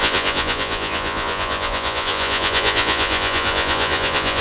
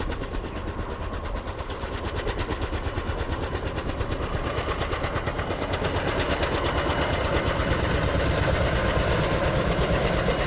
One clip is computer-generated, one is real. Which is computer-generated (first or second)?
first